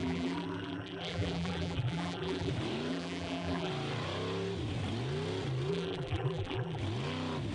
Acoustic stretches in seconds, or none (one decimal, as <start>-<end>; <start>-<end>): 2.5-2.9; 3.7-5.7; 6.8-7.5